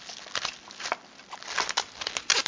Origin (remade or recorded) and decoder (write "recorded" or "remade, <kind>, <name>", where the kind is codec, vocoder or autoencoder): recorded